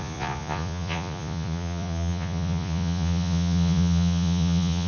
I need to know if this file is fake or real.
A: fake